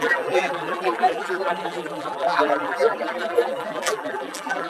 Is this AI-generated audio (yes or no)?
yes